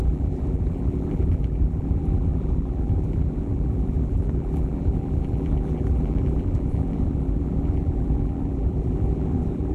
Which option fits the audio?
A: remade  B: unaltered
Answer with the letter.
A